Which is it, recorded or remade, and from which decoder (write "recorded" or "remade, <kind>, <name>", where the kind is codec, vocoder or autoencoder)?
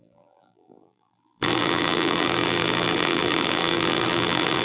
remade, vocoder, BigVGAN v2